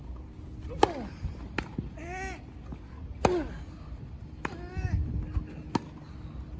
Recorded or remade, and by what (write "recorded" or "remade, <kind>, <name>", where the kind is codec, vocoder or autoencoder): recorded